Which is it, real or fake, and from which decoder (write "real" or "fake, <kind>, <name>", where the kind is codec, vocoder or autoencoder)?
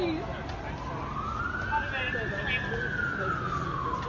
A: real